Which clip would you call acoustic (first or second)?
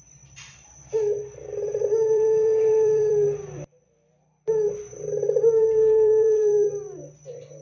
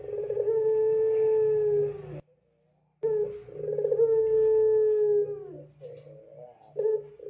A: second